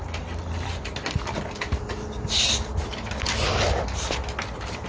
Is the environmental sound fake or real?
real